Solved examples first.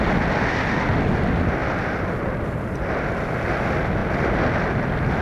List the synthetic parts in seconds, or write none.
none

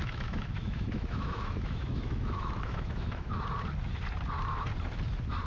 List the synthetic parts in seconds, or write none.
0.0-3.3 (autoencoder, DAC-VAE)

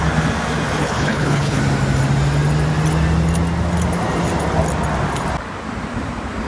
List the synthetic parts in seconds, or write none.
0.8-1.6 (codec, HILCodec)

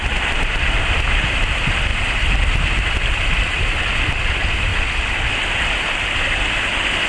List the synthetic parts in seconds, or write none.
4.7-5.3 (vocoder, BigVGAN v2)

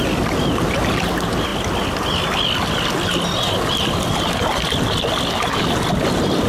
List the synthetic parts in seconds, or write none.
none